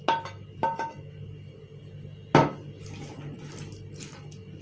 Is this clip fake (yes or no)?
no